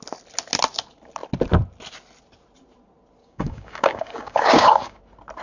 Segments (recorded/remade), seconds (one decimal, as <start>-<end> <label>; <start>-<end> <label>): 0.0-3.2 recorded; 3.2-5.0 remade; 5.0-5.4 recorded